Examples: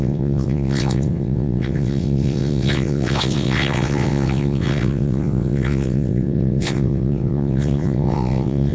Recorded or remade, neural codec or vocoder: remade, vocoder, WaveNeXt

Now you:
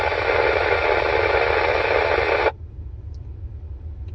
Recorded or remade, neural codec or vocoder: recorded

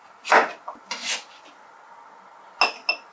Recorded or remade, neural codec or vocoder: recorded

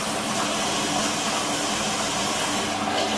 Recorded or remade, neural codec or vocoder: recorded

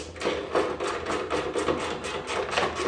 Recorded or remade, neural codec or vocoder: recorded